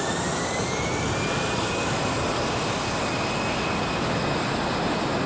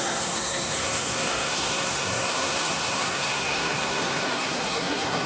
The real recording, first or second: first